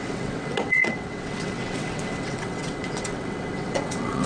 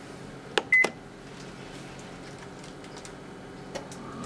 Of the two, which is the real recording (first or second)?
second